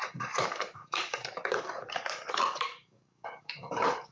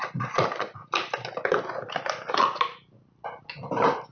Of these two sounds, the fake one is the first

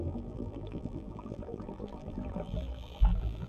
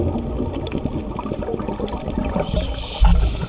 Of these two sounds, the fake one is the first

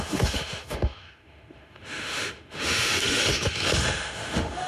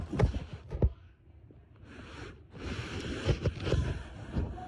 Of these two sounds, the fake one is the first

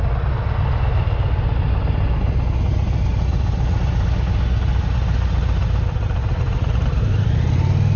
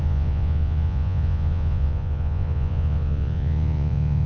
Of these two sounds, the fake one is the second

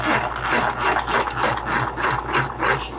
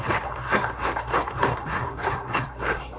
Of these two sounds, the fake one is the second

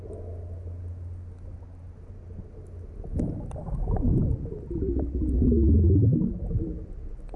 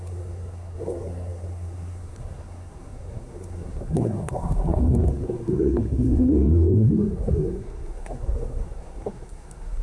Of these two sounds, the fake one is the second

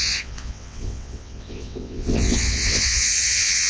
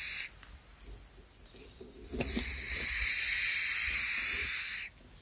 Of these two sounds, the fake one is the first